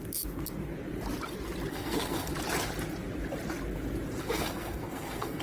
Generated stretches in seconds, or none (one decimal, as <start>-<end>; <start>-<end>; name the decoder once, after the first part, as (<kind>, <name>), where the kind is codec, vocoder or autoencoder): 1.7-2.3 (codec, SNAC); 4.2-5.4